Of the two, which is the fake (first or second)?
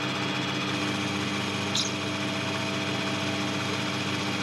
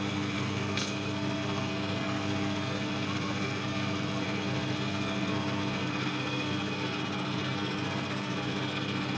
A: second